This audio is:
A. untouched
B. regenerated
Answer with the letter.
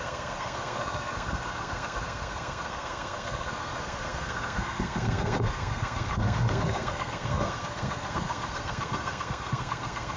B